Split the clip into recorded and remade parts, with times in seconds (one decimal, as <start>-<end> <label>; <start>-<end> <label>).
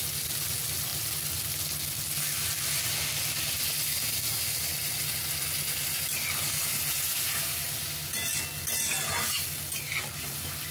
0.0-10.7 recorded